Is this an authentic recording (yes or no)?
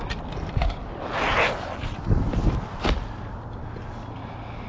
yes